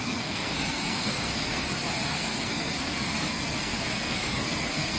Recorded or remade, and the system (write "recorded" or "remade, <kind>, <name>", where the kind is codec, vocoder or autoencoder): remade, codec, SNAC